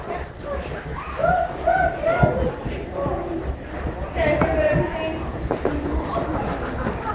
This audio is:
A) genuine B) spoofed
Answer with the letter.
A